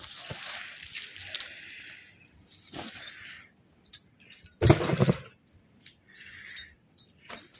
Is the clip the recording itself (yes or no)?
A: yes